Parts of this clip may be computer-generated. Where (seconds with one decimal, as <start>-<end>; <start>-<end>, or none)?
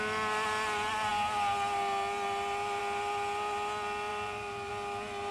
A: 4.1-4.7